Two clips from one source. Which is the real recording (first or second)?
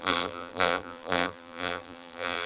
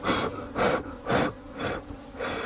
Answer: second